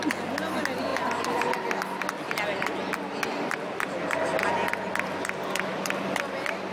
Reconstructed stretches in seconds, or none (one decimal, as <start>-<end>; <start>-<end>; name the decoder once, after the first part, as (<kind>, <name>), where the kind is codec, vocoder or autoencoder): 5.7-6.3 (vocoder, BigVGAN v2)